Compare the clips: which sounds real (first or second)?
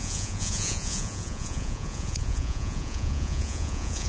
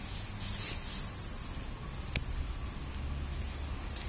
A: second